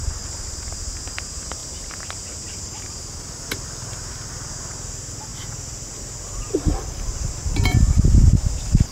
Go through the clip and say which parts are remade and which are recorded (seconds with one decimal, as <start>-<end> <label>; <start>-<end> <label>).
0.0-8.1 recorded; 8.1-8.9 remade